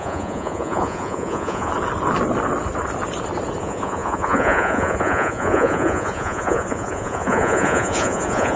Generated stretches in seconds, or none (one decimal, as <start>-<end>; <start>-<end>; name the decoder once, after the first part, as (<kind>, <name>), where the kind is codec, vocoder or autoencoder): 0.0-1.7 (vocoder, Vocos); 3.6-8.6